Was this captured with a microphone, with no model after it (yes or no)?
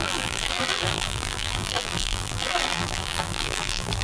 no